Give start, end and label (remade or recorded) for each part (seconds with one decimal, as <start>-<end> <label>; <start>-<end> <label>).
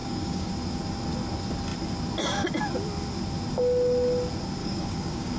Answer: 0.0-0.5 remade; 0.5-4.6 recorded; 4.6-5.4 remade